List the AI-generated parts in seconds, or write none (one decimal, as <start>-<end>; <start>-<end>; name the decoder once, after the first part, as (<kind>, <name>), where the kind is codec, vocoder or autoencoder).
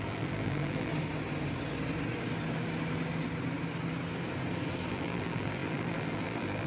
0.0-0.9 (vocoder, BigVGAN v2); 4.9-6.7